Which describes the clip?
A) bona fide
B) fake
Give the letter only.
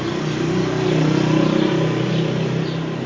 A